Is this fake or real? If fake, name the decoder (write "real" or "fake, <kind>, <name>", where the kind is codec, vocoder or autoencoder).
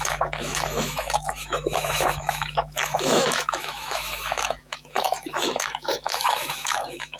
fake, autoencoder, DAC-VAE